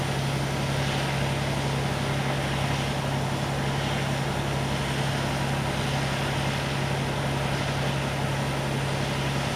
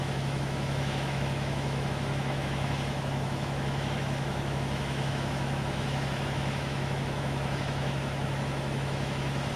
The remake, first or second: second